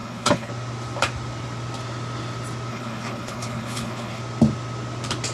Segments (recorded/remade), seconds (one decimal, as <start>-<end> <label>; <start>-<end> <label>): 0.0-0.5 remade; 0.5-2.7 recorded; 2.7-4.2 remade; 4.2-5.3 recorded

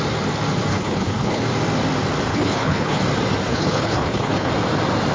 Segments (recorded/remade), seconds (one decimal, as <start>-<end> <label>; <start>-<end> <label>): 0.0-0.7 recorded; 0.7-1.4 remade; 1.4-2.3 recorded; 2.3-3.0 remade; 3.0-3.5 recorded; 3.5-4.5 remade; 4.5-5.1 recorded

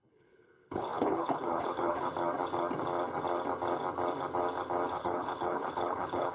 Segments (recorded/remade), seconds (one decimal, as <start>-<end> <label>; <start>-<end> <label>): 0.0-2.1 remade; 2.1-4.9 recorded; 4.9-6.3 remade

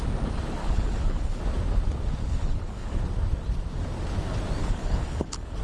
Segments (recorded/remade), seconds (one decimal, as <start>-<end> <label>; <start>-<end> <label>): 0.0-0.6 recorded; 0.6-1.4 remade; 1.4-2.2 recorded; 2.2-3.0 remade; 3.0-4.6 recorded; 4.6-5.6 remade

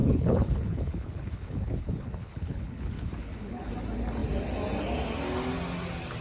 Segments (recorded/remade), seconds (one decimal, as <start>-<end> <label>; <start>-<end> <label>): 0.0-3.7 remade; 3.7-6.2 recorded